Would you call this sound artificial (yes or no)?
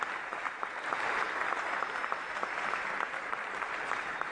yes